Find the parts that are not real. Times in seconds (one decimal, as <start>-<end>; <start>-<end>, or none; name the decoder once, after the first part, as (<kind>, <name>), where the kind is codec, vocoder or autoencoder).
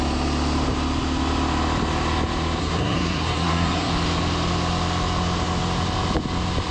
2.6-3.9 (codec, SNAC)